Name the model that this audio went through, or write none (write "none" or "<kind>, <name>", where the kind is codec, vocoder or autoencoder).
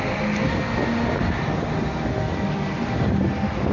none